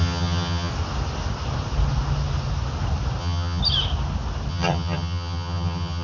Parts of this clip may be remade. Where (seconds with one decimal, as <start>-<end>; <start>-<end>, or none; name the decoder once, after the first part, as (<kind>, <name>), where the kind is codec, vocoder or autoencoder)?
0.0-0.7 (vocoder, HiFi-GAN); 3.2-3.6; 4.5-6.0